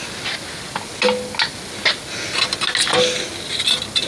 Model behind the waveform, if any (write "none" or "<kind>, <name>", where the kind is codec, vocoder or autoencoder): none